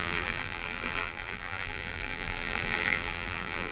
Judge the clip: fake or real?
fake